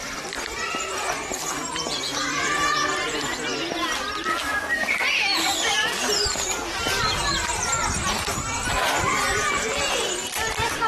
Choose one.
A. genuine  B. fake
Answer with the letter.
B